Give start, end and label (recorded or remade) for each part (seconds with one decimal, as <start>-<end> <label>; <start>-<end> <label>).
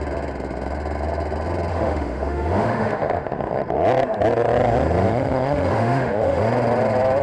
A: 0.0-1.7 recorded; 1.7-3.6 remade; 3.6-5.1 recorded; 5.1-6.4 remade; 6.4-7.2 recorded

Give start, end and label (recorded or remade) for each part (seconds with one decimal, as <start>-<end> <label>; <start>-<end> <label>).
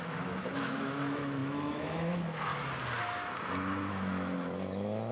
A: 0.0-2.5 remade; 2.5-3.9 recorded; 3.9-5.1 remade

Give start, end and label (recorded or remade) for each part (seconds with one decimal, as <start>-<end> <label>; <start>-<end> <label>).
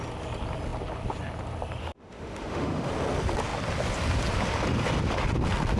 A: 0.0-1.8 recorded; 1.8-2.9 remade; 2.9-5.8 recorded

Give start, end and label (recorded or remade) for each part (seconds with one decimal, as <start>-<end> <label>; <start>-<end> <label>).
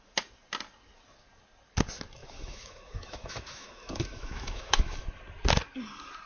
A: 0.0-2.2 recorded; 2.2-5.0 remade; 5.0-6.3 recorded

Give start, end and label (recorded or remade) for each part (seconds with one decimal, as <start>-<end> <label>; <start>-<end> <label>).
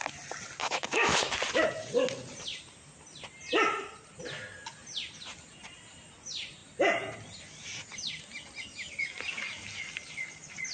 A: 0.0-0.6 recorded; 0.6-1.3 remade; 1.3-10.7 recorded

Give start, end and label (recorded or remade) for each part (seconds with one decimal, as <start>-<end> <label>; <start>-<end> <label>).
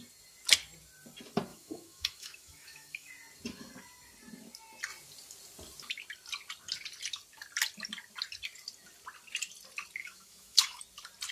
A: 0.0-1.5 recorded; 1.5-3.1 remade; 3.1-10.0 recorded; 10.0-10.8 remade; 10.8-11.3 recorded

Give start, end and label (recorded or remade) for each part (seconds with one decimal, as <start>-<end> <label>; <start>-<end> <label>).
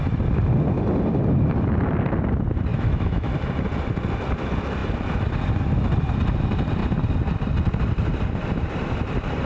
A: 0.0-2.7 recorded; 2.7-3.3 remade; 3.3-9.5 recorded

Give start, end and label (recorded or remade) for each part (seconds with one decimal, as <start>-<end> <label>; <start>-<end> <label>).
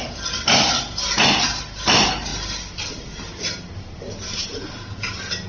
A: 0.0-5.5 recorded